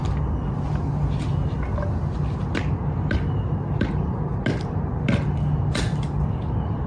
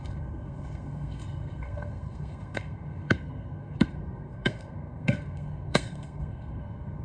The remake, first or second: second